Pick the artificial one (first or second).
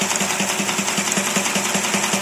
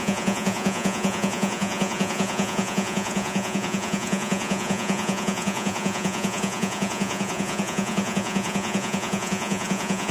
second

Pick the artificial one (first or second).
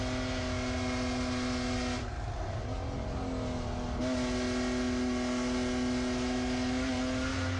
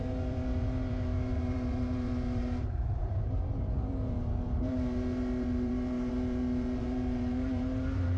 second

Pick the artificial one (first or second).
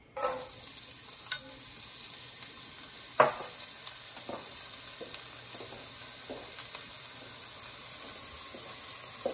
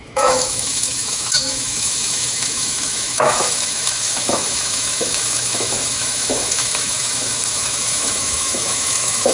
second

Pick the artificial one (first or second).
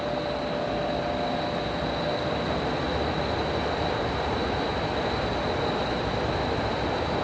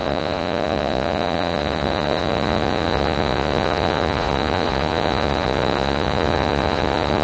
second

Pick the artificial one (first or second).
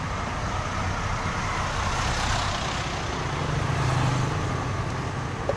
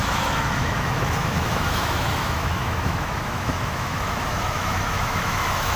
second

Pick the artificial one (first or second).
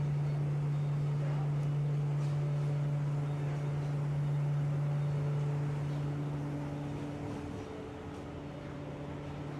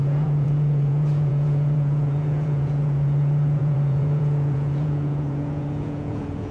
second